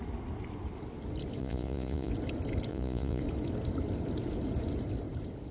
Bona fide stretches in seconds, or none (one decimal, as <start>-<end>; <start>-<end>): 0.0-1.4; 2.1-2.7; 3.2-5.5